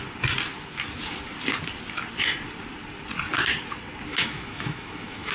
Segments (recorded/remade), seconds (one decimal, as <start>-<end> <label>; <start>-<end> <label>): 0.0-4.1 recorded; 4.1-5.3 remade